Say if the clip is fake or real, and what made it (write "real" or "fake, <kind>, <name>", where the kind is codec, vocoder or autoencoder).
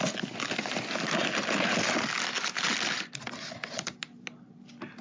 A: real